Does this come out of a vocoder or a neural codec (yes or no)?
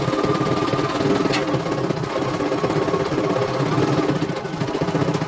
no